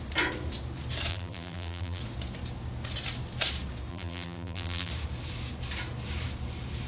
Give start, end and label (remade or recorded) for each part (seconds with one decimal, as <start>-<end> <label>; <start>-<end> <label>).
0.0-1.1 recorded; 1.1-2.0 remade; 2.0-3.9 recorded; 3.9-4.9 remade; 4.9-6.9 recorded